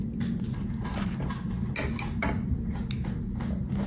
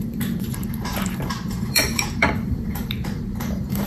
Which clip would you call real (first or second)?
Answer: first